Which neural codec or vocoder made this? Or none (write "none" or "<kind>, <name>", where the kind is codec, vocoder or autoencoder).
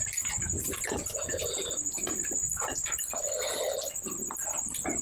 none